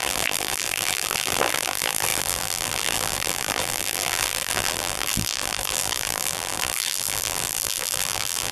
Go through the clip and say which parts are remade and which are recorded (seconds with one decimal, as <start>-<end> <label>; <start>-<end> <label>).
0.0-8.5 remade